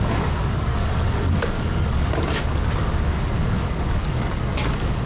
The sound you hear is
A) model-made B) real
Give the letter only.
A